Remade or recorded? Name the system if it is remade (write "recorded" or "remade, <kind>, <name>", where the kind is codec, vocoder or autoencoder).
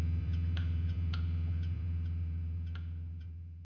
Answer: remade, vocoder, Vocos